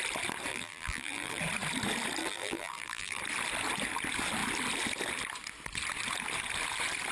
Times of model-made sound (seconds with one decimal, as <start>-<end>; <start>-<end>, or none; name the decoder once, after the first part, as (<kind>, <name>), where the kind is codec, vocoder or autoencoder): 0.5-1.4 (vocoder, BigVGAN v2); 2.2-3.2